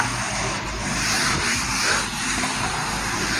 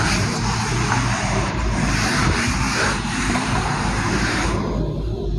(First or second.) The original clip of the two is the first